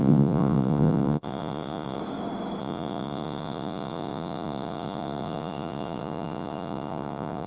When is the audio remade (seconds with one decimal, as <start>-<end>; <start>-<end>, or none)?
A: 0.0-2.0; 2.6-7.5